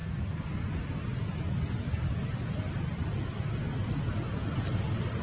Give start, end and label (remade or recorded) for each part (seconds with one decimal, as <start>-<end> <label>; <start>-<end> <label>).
0.0-1.8 recorded; 1.8-3.6 remade; 3.6-4.5 recorded; 4.5-5.2 remade